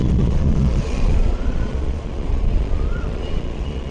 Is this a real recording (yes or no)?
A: no